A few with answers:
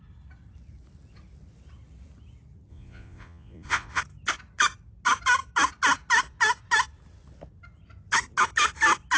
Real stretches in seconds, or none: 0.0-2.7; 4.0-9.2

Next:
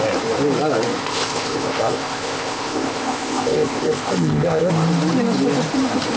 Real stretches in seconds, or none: 0.0-1.0; 4.7-6.2

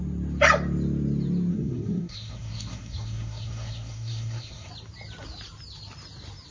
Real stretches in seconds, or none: 0.0-1.5; 4.7-6.5

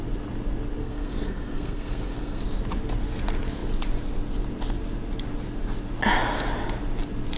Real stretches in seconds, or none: 0.0-0.8; 2.4-7.4

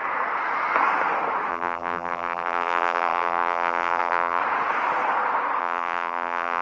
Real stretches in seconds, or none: 0.0-1.5; 4.4-5.6